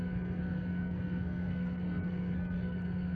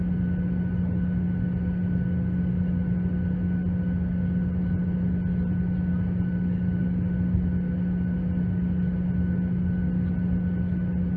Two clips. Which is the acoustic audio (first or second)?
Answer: second